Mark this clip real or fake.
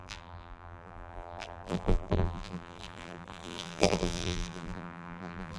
fake